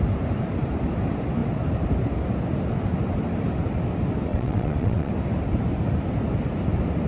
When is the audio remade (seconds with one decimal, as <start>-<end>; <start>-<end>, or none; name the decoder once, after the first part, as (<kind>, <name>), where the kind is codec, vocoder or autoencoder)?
4.3-5.1 (vocoder, WaveNeXt)